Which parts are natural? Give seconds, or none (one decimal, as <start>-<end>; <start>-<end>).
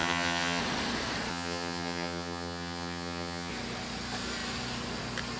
0.6-1.3; 3.5-5.4